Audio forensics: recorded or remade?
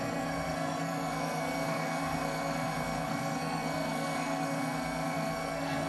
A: remade